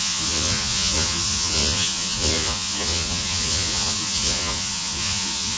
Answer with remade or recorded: remade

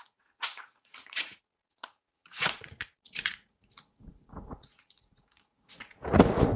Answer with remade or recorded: remade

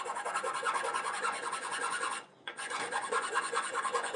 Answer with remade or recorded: remade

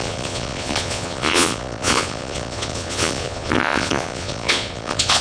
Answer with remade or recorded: remade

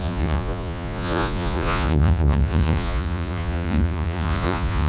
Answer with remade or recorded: remade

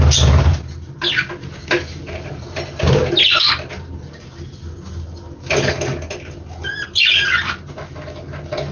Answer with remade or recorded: recorded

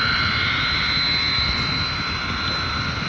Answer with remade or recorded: recorded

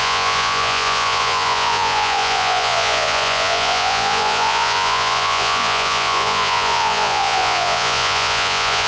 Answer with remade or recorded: remade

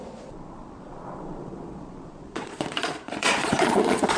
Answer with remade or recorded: remade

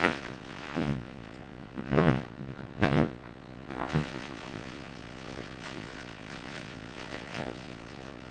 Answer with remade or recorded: remade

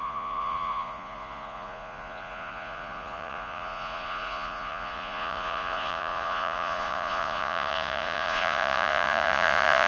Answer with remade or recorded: remade